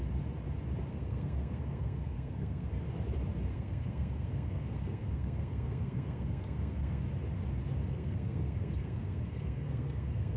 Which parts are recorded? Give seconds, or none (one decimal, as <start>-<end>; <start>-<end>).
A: 0.0-0.9; 2.7-3.5; 7.0-7.8